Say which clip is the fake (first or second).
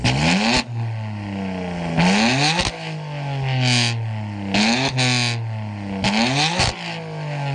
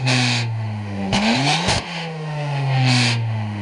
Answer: second